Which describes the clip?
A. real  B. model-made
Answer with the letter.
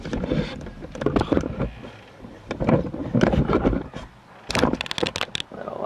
A